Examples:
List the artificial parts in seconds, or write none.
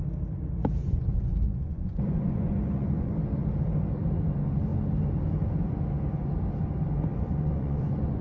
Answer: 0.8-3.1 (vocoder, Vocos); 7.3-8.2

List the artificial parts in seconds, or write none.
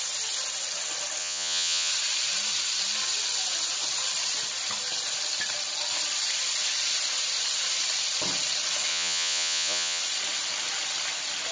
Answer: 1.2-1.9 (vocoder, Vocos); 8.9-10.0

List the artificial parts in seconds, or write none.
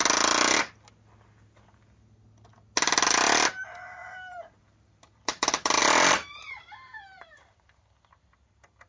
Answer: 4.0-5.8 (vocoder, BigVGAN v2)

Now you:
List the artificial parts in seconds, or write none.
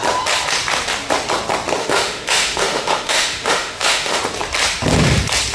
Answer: 1.8-4.2 (autoencoder, DAC-VAE)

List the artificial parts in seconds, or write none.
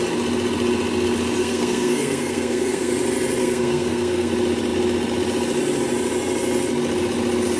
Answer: 1.4-2.9 (codec, SNAC); 3.4-4.3